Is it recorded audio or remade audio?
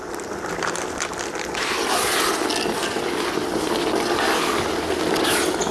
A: recorded